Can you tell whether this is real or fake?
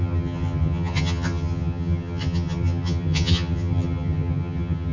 fake